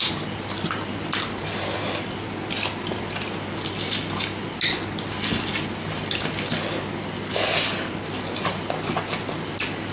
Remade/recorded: recorded